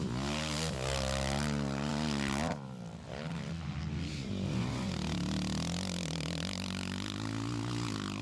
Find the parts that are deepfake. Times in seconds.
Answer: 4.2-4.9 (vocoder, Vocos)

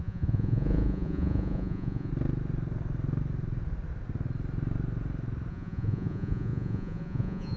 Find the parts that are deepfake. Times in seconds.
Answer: 0.0-2.1 (vocoder, Vocos); 5.5-7.6

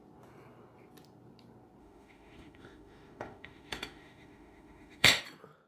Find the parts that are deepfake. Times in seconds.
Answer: 1.8-5.2 (autoencoder, DAC-VAE)

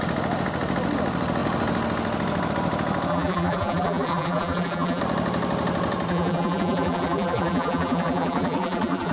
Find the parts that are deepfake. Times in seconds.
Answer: 3.1-5.0 (vocoder, BigVGAN v2); 6.1-9.1

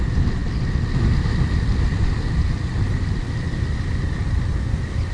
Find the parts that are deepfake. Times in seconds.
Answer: 0.0-4.2 (vocoder, BigVGAN v2)

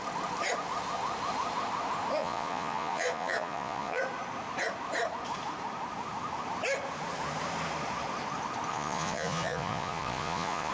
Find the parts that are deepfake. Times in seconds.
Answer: 2.2-4.0 (vocoder, Vocos); 8.7-10.7

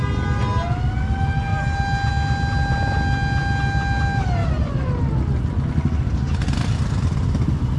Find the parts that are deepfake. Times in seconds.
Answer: none

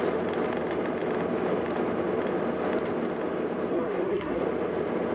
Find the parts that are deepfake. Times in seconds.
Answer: 3.7-4.4 (codec, SNAC)